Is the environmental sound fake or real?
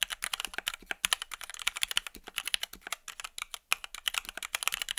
real